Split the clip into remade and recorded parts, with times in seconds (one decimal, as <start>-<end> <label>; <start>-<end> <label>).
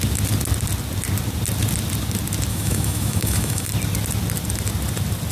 0.0-2.5 recorded; 2.5-3.7 remade; 3.7-5.3 recorded